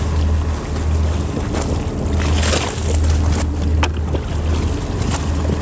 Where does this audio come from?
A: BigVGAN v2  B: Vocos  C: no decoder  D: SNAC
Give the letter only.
C